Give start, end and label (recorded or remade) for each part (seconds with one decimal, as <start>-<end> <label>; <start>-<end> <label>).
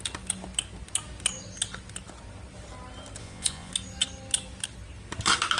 0.0-3.2 recorded; 3.2-3.7 remade; 3.7-5.6 recorded